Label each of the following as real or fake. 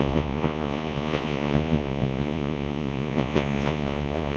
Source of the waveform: fake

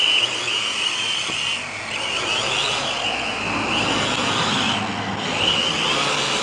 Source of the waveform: real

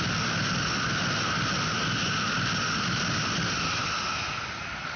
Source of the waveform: real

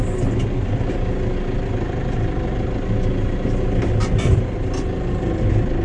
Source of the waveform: real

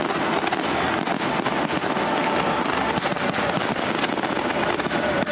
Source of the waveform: real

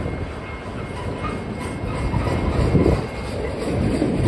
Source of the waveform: real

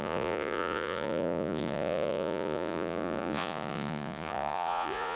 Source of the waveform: fake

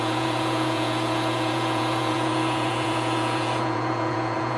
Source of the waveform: fake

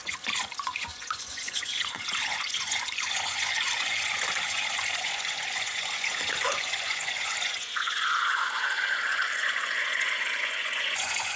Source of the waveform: fake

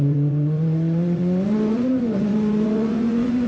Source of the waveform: fake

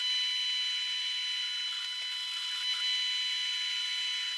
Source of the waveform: real